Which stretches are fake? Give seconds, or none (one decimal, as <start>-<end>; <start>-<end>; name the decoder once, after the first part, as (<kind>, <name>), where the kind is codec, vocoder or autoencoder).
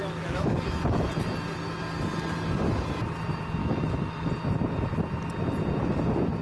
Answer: 0.0-1.1 (autoencoder, DAC-VAE); 3.6-4.3